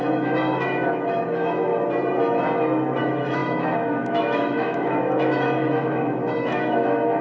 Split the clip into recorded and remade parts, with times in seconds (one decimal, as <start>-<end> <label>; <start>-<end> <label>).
0.0-1.7 remade; 1.7-3.0 recorded; 3.0-7.2 remade